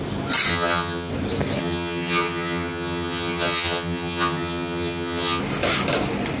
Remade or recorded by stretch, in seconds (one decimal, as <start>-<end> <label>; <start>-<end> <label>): 0.0-0.5 recorded; 0.5-1.1 remade; 1.1-1.6 recorded; 1.6-5.4 remade; 5.4-6.4 recorded

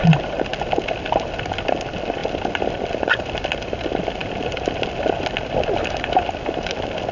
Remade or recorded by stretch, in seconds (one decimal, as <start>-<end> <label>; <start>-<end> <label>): 0.0-7.1 recorded

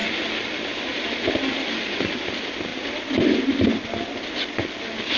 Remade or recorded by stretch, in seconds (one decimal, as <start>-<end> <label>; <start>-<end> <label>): 0.0-5.2 recorded

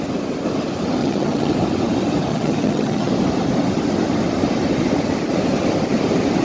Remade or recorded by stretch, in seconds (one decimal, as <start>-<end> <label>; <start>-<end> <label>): 0.0-1.0 recorded; 1.0-1.5 remade; 1.5-2.3 recorded; 2.3-3.1 remade; 3.1-6.4 recorded

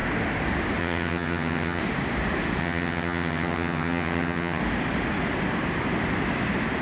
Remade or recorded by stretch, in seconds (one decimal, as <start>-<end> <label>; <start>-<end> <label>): 0.0-0.8 recorded; 0.8-1.8 remade; 1.8-2.6 recorded; 2.6-4.6 remade; 4.6-6.8 recorded